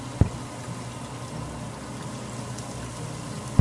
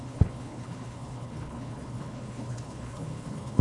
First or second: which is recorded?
first